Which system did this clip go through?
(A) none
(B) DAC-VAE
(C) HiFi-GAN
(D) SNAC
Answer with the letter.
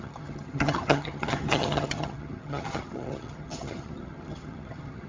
C